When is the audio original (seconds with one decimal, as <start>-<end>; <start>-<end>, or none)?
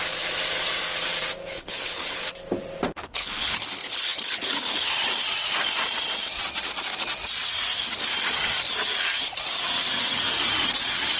0.0-1.5; 2.2-3.0; 4.9-11.2